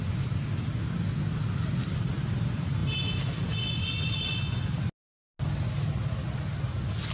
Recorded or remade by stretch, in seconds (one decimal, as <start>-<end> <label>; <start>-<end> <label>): 0.0-7.1 recorded